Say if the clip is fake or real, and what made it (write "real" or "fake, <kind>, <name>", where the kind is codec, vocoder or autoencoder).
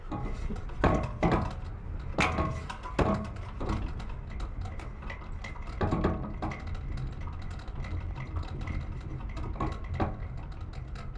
real